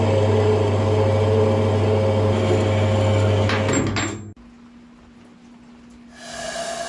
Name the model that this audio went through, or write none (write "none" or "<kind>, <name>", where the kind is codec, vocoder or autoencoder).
none